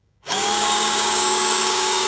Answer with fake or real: fake